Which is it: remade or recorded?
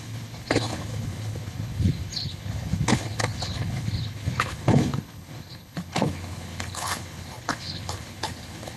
remade